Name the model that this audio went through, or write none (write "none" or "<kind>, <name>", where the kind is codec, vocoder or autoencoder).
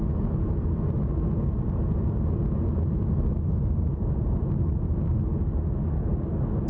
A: none